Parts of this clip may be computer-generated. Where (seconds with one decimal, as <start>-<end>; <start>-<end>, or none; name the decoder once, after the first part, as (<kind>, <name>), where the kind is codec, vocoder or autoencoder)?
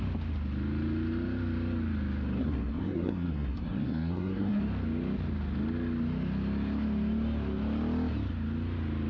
2.4-4.6 (codec, SNAC)